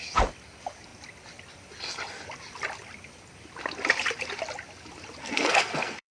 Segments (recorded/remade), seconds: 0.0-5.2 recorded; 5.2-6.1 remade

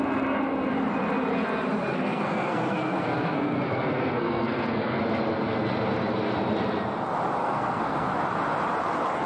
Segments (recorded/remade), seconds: 0.0-1.9 recorded; 1.9-5.0 remade; 5.0-7.4 recorded; 7.4-8.1 remade; 8.1-9.3 recorded

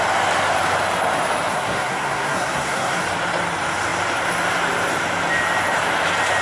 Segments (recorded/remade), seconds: 0.0-1.5 recorded; 1.5-3.0 remade; 3.0-6.4 recorded

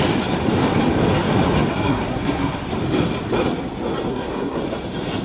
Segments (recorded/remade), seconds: 0.0-1.7 recorded; 1.7-2.6 remade; 2.6-4.1 recorded; 4.1-4.6 remade; 4.6-5.2 recorded

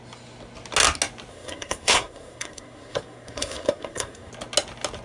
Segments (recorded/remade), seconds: 0.0-1.3 recorded; 1.3-4.3 remade; 4.3-5.0 recorded

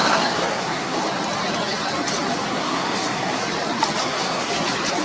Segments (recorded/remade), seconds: 0.0-1.0 remade; 1.0-2.5 recorded; 2.5-3.4 remade; 3.4-4.0 recorded; 4.0-4.5 remade; 4.5-5.0 recorded